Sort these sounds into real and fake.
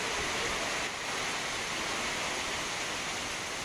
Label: real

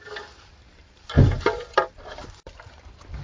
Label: fake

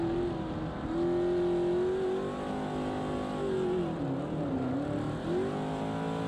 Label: real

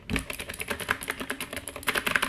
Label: real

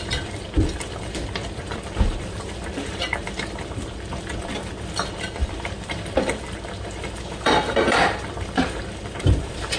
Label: fake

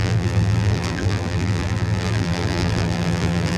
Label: fake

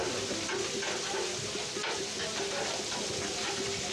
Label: real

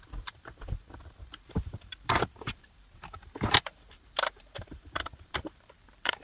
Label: fake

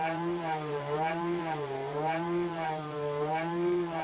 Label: fake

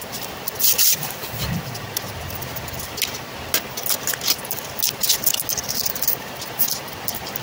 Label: real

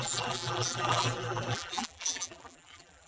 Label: fake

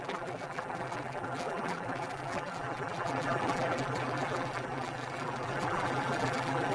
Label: fake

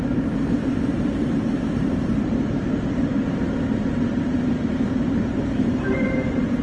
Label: fake